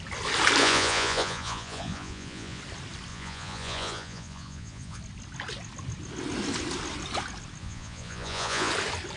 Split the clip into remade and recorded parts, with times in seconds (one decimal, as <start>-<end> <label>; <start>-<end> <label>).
0.0-0.6 recorded; 0.6-2.6 remade; 2.6-3.1 recorded; 3.1-5.0 remade; 5.0-7.6 recorded; 7.6-8.7 remade; 8.7-9.2 recorded